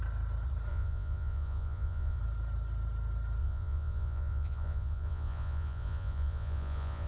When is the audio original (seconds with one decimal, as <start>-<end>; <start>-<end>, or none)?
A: 0.0-0.7; 2.2-3.4